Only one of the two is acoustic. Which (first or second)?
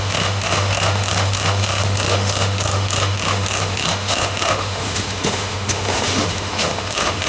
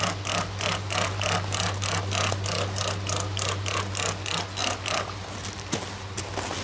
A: second